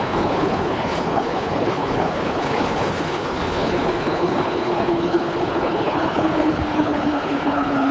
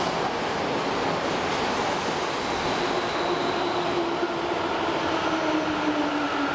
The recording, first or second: second